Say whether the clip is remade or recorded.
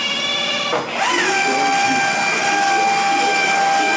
recorded